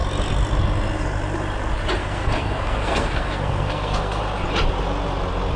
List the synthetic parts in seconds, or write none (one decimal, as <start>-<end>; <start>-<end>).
2.0-4.2